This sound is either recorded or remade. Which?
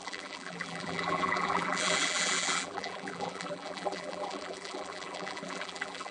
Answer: remade